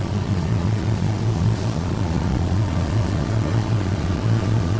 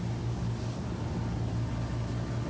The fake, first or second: first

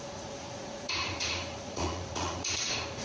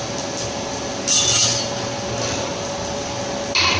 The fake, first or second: first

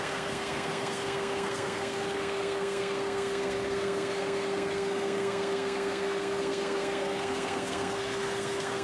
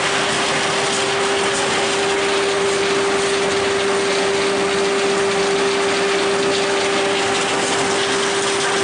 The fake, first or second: first